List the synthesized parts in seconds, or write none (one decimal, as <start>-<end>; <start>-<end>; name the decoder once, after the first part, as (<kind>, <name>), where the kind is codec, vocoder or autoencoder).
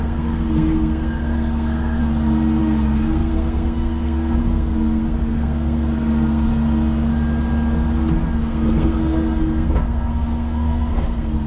0.0-2.0 (codec, SNAC); 2.6-6.5; 8.4-11.5